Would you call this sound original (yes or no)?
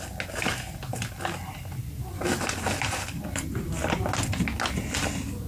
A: yes